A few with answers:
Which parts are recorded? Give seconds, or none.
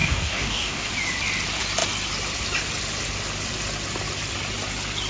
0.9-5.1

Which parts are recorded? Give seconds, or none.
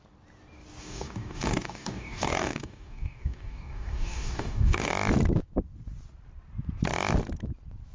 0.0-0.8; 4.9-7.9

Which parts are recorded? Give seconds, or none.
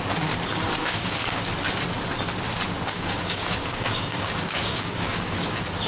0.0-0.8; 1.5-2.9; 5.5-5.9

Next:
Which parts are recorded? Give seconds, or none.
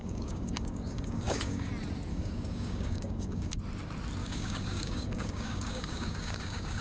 1.7-2.1; 3.6-4.2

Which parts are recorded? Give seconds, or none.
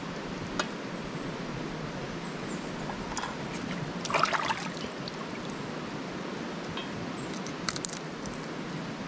0.0-9.1